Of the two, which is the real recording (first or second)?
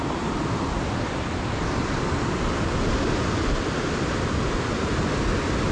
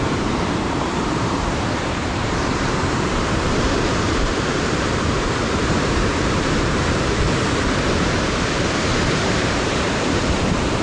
first